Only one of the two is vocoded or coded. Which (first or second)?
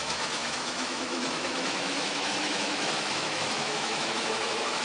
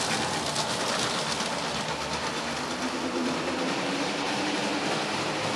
first